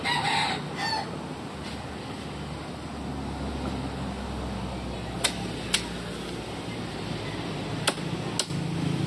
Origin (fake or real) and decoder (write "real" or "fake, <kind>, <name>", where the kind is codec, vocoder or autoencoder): real